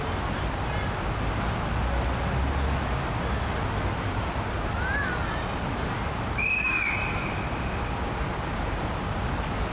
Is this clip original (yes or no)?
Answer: yes